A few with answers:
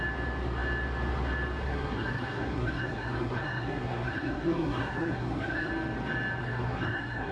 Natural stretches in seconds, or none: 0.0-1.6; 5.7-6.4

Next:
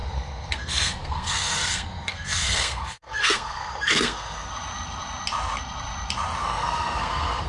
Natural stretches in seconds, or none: 4.5-6.4

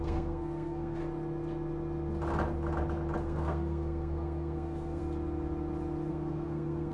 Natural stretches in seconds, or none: 1.0-3.2; 5.0-6.1

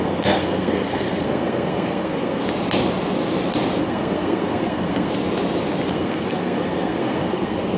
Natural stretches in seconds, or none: 2.4-3.8; 5.1-5.9

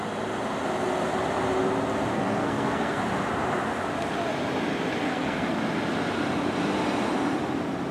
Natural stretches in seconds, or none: 0.0-2.1; 3.0-5.1; 5.6-7.9

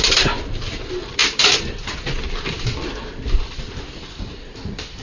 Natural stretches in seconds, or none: 0.0-5.0

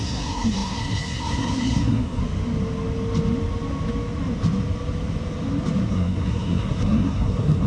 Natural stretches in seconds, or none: 2.2-5.9